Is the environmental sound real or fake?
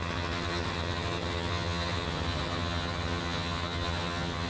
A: fake